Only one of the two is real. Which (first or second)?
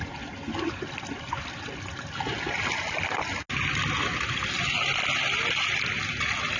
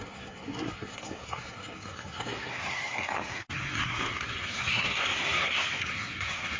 first